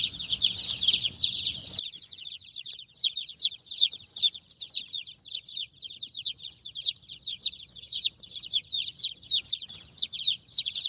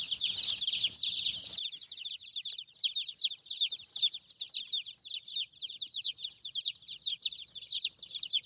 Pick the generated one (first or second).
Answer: first